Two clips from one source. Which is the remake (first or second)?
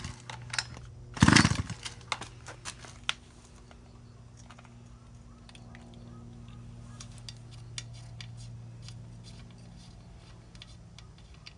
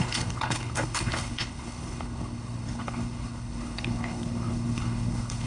second